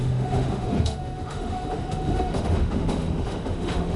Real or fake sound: fake